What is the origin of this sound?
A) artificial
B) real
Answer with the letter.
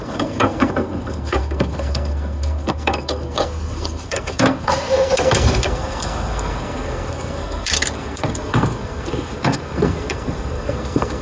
A